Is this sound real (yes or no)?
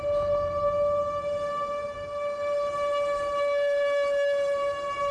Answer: yes